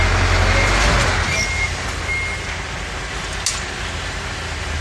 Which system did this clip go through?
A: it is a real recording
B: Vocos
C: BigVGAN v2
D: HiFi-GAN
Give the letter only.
A